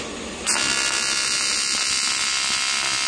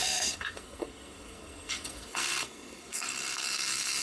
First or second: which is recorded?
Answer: first